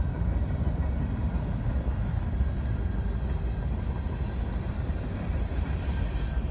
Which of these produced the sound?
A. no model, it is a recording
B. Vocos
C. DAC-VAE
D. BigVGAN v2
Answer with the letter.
A